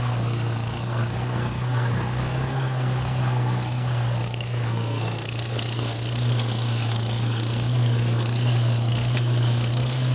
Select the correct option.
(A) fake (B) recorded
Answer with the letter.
A